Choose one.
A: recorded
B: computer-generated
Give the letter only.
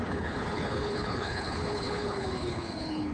B